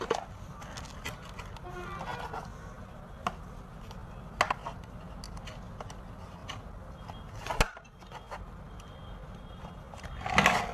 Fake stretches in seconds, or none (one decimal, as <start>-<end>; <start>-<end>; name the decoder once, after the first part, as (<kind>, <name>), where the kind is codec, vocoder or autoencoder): 2.8-3.4 (vocoder, BigVGAN v2)